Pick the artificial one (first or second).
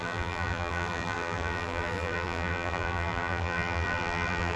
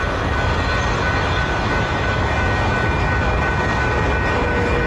first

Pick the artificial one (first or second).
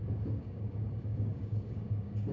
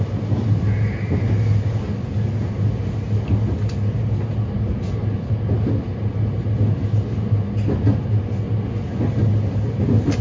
first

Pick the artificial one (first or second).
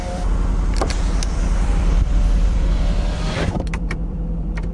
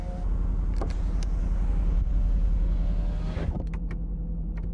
first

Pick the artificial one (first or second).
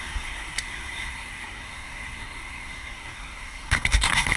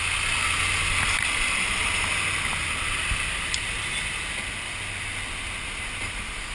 first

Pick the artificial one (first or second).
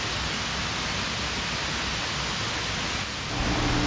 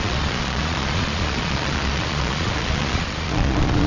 second